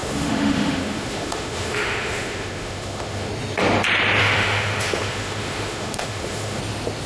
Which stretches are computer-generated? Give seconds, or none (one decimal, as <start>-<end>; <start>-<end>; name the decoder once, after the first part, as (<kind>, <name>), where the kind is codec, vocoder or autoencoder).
0.0-3.3 (autoencoder, DAC-VAE); 4.2-6.6